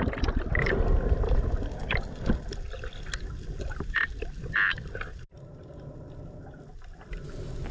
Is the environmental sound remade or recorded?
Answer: recorded